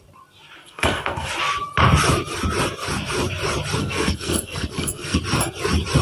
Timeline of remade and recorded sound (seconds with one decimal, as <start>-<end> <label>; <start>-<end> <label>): 0.0-0.6 recorded; 0.6-1.3 remade; 1.3-3.8 recorded; 3.8-5.2 remade; 5.2-6.0 recorded